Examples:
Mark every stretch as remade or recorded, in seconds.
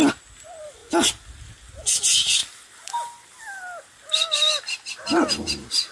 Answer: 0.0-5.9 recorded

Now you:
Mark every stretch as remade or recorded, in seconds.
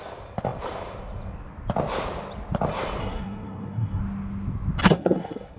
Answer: 0.0-3.0 recorded; 3.0-4.0 remade; 4.0-4.8 recorded; 4.8-5.6 remade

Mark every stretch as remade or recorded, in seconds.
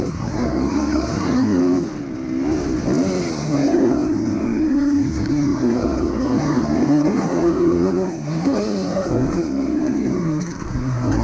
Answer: 0.0-1.6 remade; 1.6-3.3 recorded; 3.3-11.2 remade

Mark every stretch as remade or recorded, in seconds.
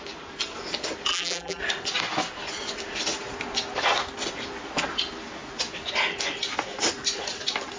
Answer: 0.0-1.1 recorded; 1.1-1.6 remade; 1.6-7.8 recorded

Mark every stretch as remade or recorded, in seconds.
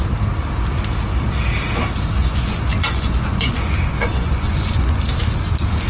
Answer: 0.0-2.2 recorded; 2.2-5.0 remade; 5.0-5.9 recorded